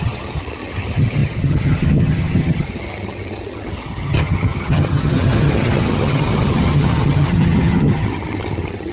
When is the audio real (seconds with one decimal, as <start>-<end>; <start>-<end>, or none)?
none